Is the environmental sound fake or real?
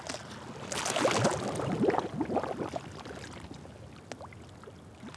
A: real